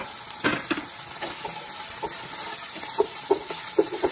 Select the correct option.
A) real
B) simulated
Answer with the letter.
A